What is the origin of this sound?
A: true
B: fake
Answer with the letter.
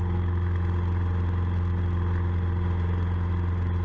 A